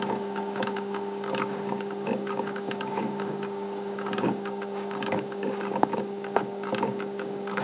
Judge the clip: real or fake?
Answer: fake